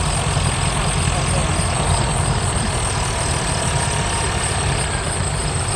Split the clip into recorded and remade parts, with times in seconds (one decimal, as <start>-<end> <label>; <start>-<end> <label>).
0.0-5.8 recorded